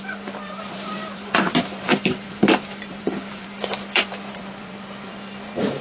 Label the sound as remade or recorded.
remade